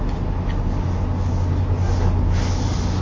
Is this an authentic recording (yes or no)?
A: yes